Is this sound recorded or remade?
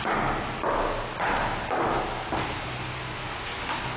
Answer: recorded